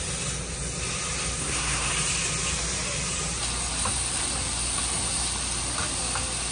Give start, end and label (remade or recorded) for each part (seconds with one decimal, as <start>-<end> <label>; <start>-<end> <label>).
0.0-1.4 recorded; 1.4-1.9 remade; 1.9-6.5 recorded